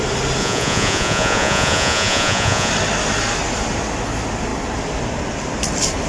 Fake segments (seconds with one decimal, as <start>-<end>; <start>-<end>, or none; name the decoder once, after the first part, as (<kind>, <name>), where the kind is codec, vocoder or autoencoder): 0.4-2.7 (vocoder, Vocos)